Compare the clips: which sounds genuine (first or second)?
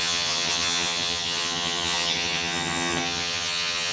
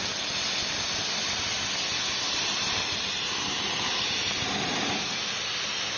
second